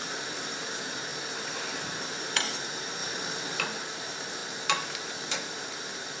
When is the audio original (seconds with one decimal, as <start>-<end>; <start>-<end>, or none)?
1.1-1.8; 3.0-3.6; 4.4-5.1